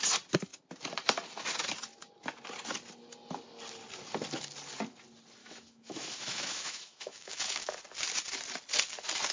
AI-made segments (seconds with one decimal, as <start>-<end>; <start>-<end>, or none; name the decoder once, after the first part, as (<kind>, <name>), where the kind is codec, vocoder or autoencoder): 5.4-7.8 (autoencoder, DAC-VAE)